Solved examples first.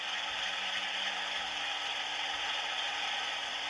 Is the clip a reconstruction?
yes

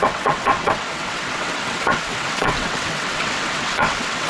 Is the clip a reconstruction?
yes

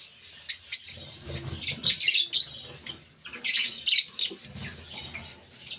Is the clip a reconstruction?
no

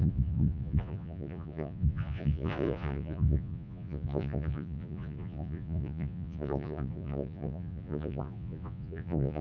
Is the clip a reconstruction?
yes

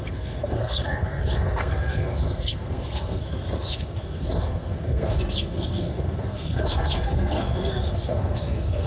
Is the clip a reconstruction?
yes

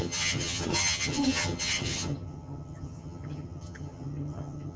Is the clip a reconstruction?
yes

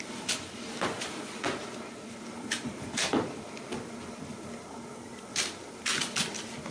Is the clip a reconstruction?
no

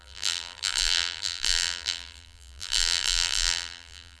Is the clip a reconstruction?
yes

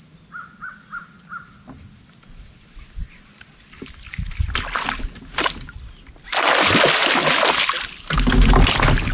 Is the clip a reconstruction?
no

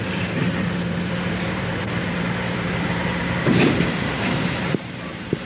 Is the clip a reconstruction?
yes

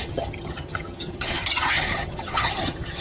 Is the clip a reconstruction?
yes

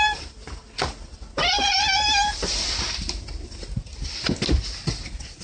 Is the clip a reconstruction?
no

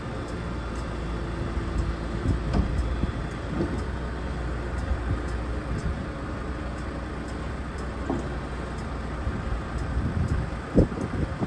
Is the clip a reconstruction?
no